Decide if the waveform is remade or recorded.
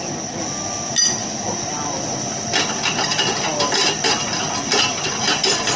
recorded